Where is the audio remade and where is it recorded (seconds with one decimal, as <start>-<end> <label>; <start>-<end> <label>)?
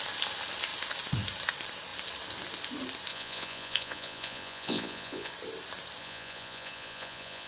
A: 0.0-3.1 recorded; 3.1-5.3 remade; 5.3-6.0 recorded; 6.0-7.5 remade